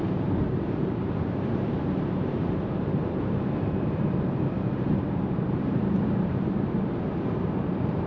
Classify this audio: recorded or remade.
remade